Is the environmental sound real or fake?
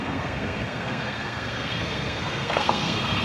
fake